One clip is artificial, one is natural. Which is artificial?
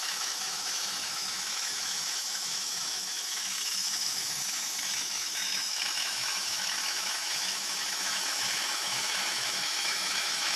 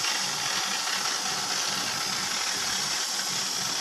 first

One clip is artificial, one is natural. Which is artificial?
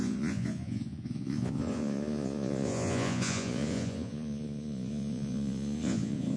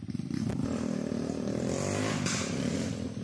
first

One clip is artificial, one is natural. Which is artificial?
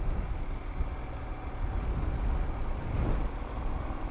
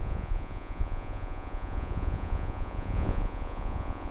second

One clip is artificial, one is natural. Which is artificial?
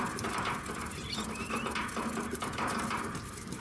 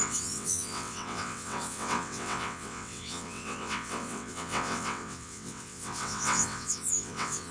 second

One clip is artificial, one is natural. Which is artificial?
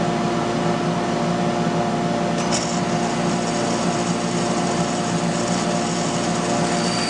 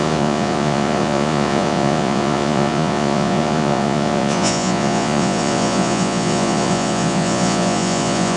second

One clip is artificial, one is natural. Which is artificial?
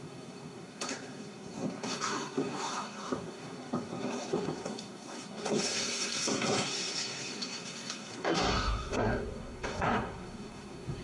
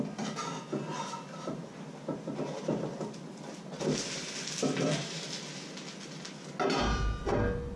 first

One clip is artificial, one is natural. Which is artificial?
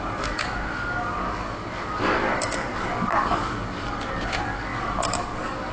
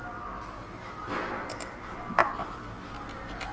first